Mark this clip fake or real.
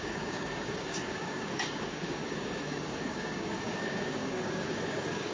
fake